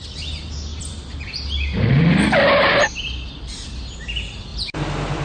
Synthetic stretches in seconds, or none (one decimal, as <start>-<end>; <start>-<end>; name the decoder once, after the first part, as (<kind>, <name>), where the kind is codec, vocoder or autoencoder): 0.7-3.8 (vocoder, BigVGAN v2); 4.5-5.2